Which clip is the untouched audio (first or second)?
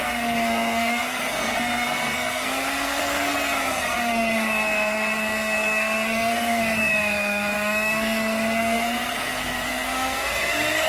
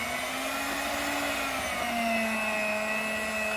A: second